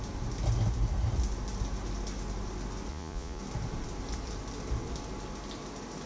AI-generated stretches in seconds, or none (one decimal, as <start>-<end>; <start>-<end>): 2.9-3.4